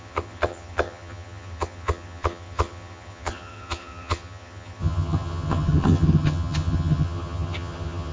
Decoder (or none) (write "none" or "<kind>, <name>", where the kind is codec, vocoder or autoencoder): vocoder, HiFi-GAN